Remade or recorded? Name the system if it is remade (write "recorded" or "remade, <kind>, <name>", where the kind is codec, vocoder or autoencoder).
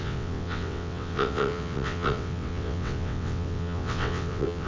remade, vocoder, WaveNeXt